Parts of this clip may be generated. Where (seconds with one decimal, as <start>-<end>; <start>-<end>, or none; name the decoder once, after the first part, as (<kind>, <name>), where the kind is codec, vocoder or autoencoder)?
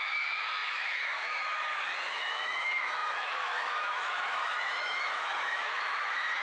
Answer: 0.0-6.4 (autoencoder, DAC-VAE)